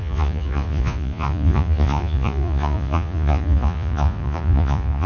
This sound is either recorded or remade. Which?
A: remade